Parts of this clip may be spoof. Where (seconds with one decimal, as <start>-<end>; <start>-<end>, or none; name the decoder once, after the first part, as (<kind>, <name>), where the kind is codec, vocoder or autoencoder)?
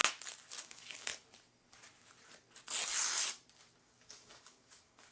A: 0.6-1.1 (codec, DAC); 3.8-5.1